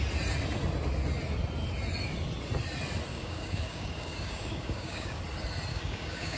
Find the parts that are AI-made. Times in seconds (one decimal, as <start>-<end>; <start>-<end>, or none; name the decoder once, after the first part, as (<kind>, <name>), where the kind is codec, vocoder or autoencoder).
3.1-5.2 (codec, DAC); 5.7-6.4